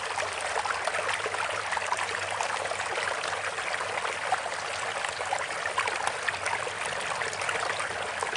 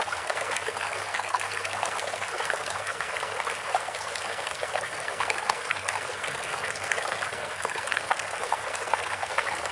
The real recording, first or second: first